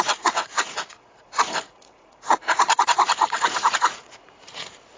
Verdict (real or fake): fake